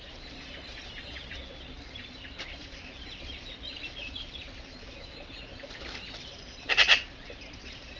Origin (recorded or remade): remade